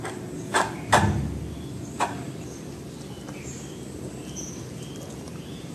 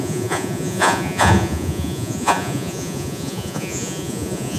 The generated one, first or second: second